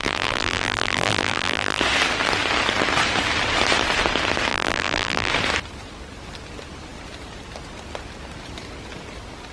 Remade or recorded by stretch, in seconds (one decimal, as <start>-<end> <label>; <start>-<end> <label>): 0.0-1.8 remade; 1.8-4.5 recorded; 4.5-5.3 remade; 5.3-9.5 recorded